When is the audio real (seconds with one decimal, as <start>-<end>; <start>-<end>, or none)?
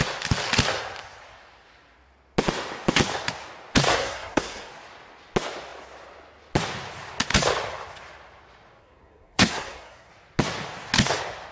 0.0-3.9; 4.7-8.8; 10.1-11.5